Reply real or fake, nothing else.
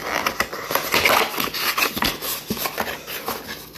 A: real